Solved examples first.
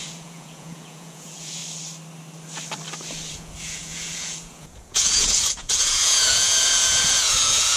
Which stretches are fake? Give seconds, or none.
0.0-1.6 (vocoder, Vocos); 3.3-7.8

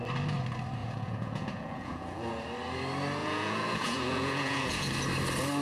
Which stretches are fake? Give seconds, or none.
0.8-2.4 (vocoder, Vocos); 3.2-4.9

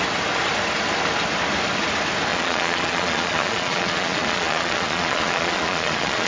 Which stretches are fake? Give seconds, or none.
2.3-6.3 (vocoder, Vocos)

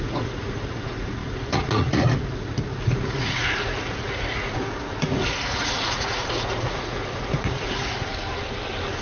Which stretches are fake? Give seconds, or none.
0.0-8.1 (vocoder, Vocos)